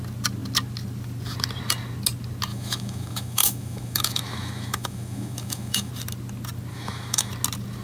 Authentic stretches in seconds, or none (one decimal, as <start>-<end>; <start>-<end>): 0.0-2.5; 5.9-6.7; 7.3-7.8